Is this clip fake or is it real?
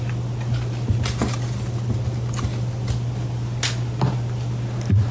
real